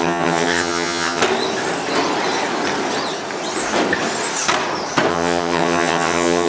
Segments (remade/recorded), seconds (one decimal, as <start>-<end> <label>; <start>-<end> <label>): 0.0-1.2 remade; 1.2-5.1 recorded; 5.1-6.5 remade